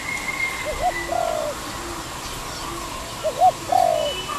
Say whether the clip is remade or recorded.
recorded